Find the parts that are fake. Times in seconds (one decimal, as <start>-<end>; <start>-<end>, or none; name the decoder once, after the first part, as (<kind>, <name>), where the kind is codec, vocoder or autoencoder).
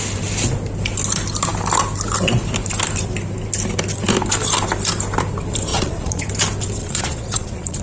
5.7-6.3 (vocoder, Vocos); 6.8-7.8